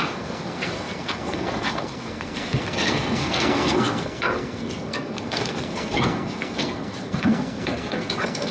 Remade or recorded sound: remade